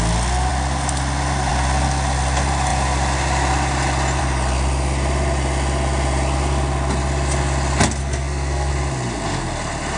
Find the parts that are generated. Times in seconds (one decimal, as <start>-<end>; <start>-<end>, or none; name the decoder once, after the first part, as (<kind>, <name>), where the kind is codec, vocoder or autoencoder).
8.0-8.7 (codec, SNAC)